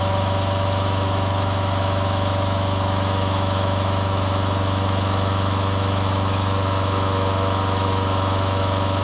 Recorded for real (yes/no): no